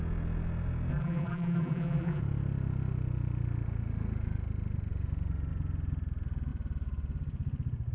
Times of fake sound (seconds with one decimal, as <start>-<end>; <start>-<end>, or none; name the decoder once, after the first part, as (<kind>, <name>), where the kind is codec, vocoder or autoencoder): 0.9-2.2 (vocoder, BigVGAN v2)